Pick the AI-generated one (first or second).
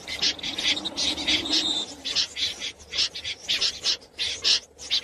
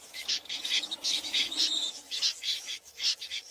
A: second